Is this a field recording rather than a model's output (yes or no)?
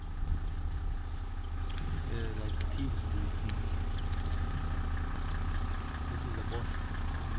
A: yes